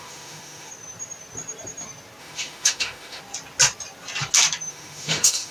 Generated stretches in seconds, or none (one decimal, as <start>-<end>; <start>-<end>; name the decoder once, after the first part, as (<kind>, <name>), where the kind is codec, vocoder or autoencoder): 0.0-0.7 (autoencoder, DAC-VAE); 2.2-3.2; 4.7-5.5